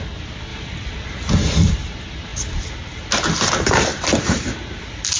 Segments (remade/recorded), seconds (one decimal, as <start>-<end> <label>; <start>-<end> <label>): 0.0-0.5 recorded; 0.5-1.3 remade; 1.3-3.9 recorded; 3.9-5.2 remade